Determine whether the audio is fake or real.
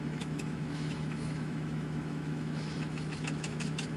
fake